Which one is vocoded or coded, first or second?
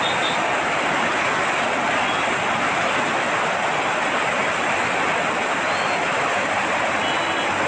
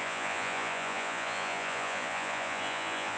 second